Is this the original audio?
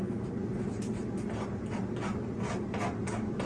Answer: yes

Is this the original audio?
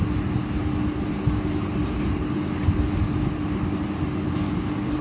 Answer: yes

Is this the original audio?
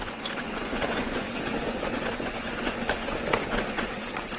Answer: no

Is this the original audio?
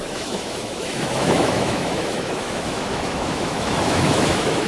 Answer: no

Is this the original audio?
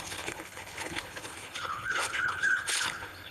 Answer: no